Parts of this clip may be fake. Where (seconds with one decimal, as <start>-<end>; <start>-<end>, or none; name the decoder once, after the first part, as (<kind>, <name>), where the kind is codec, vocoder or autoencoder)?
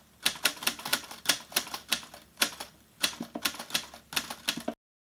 0.9-3.6 (vocoder, BigVGAN v2)